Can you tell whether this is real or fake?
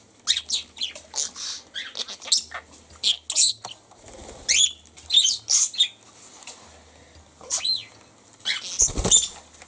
real